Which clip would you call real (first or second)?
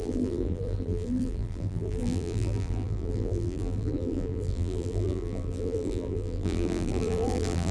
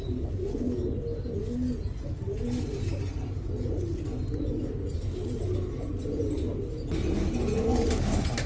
second